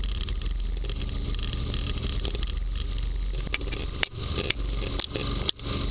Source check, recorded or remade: recorded